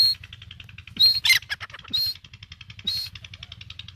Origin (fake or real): real